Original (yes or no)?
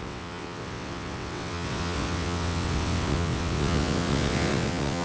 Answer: no